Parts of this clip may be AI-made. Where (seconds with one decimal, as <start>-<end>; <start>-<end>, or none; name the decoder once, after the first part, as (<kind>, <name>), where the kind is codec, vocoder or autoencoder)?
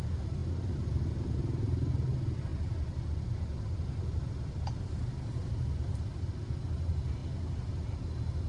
none